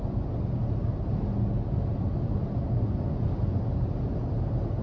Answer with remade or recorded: recorded